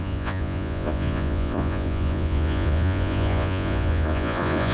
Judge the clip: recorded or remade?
remade